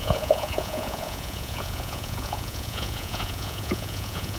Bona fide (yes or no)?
no